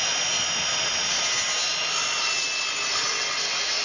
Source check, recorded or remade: recorded